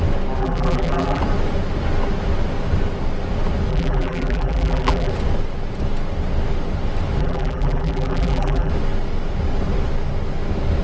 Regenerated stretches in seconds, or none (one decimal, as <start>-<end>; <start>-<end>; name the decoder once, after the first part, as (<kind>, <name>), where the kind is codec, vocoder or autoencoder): 0.4-1.2 (vocoder, BigVGAN v2); 3.7-5.1; 7.2-8.7